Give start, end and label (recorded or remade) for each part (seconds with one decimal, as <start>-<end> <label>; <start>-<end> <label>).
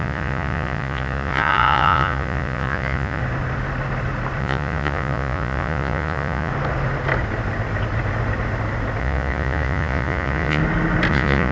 0.0-3.2 remade; 3.2-4.4 recorded; 4.4-6.5 remade; 6.5-9.0 recorded; 9.0-10.6 remade; 10.6-11.1 recorded; 11.1-11.5 remade